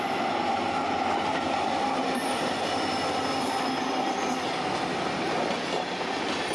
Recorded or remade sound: recorded